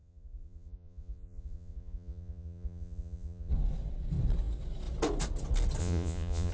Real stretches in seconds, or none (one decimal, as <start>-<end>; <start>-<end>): 3.5-5.8